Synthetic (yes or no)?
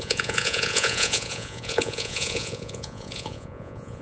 yes